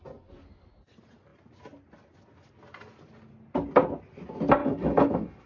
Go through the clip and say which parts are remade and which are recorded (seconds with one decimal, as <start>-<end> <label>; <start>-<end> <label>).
0.0-4.6 recorded; 4.6-5.5 remade

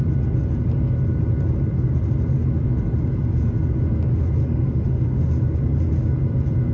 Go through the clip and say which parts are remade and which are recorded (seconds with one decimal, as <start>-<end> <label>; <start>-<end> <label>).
0.0-4.4 recorded; 4.4-5.3 remade; 5.3-6.7 recorded

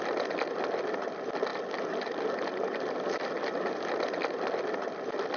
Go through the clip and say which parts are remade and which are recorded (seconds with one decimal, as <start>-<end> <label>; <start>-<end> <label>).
0.0-5.4 recorded

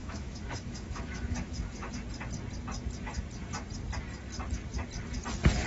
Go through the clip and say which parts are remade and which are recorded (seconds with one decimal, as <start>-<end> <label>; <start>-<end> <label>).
0.0-1.9 remade; 1.9-5.7 recorded

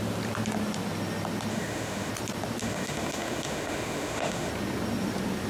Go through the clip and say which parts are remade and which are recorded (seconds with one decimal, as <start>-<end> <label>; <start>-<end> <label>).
0.0-1.5 recorded; 1.5-2.1 remade; 2.1-2.6 recorded; 2.6-4.5 remade; 4.5-5.5 recorded

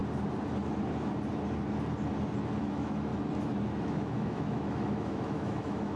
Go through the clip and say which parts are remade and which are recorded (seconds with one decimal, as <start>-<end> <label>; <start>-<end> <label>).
0.0-2.6 recorded; 2.6-3.1 remade; 3.1-3.8 recorded; 3.8-6.0 remade

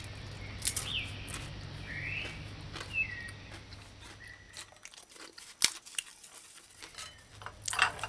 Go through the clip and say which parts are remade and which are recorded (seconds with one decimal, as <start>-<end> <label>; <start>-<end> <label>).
0.0-8.1 recorded